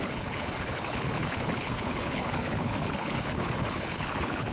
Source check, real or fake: fake